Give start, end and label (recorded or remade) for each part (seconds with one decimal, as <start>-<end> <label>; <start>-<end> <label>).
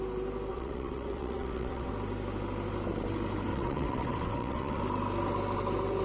0.0-0.5 recorded; 0.5-1.9 remade; 1.9-3.5 recorded; 3.5-4.8 remade; 4.8-6.0 recorded